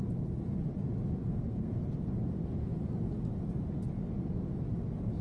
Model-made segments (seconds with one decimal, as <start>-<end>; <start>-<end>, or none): 1.2-1.8